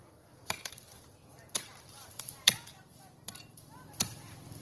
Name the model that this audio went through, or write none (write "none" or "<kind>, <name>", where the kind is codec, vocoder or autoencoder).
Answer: vocoder, BigVGAN v2